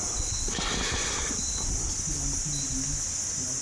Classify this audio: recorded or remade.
recorded